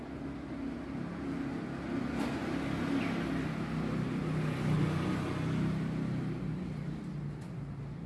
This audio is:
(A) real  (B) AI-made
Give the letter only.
A